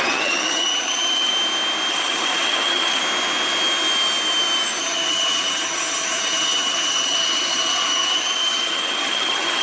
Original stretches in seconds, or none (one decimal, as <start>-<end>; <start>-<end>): 1.3-1.9; 3.0-4.8